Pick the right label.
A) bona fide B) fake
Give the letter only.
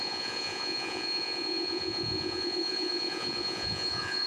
B